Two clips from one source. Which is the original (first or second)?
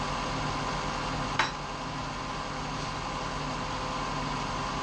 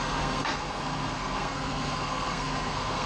first